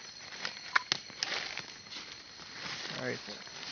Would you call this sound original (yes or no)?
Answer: yes